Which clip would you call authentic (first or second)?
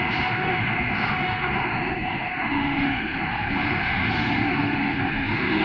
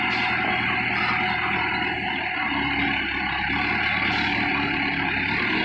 second